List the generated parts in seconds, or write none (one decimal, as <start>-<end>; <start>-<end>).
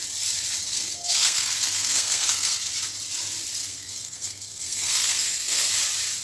0.6-2.7; 3.6-5.7